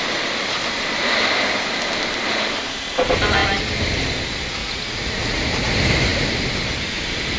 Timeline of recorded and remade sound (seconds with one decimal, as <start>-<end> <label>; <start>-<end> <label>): 0.0-4.6 recorded; 4.6-5.4 remade; 5.4-7.4 recorded